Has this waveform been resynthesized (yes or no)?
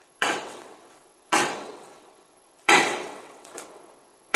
yes